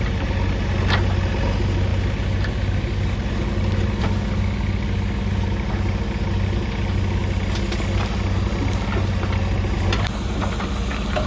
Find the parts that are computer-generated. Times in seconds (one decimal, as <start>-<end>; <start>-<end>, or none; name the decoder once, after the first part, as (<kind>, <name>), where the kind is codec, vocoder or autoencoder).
none

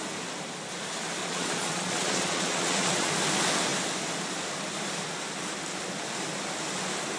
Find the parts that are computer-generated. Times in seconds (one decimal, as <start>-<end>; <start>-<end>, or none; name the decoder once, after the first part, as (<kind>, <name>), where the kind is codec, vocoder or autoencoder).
1.2-3.1 (vocoder, Vocos)

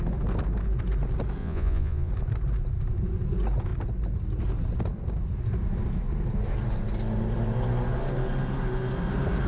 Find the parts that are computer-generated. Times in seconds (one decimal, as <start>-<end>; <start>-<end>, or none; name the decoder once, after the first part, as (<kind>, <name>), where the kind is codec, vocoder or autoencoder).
1.4-2.1 (vocoder, Vocos)

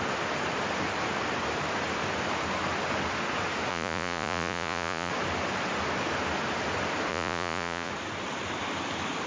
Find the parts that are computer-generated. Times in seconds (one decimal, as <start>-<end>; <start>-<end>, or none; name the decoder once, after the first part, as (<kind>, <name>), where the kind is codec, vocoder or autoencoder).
3.7-5.1 (vocoder, Vocos); 7.1-7.9

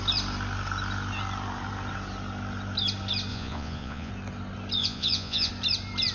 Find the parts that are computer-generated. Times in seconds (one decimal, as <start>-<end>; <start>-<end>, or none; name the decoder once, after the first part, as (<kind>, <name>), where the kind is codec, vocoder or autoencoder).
3.3-4.1 (vocoder, Vocos); 4.8-5.5